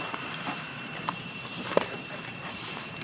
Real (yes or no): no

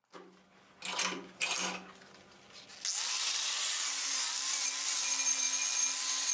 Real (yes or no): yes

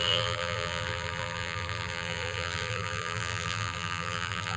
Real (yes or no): no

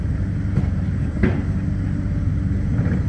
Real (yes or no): yes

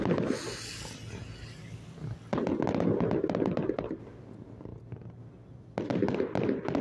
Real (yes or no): yes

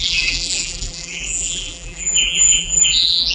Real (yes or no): no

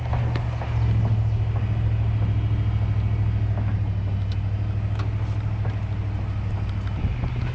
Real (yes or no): yes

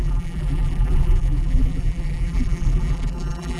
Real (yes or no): no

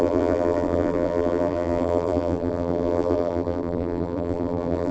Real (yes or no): no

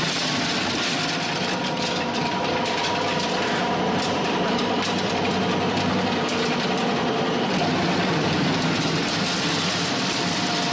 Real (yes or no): no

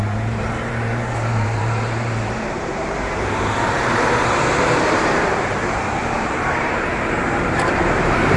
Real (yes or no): no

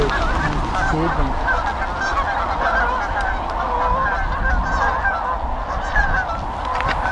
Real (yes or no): yes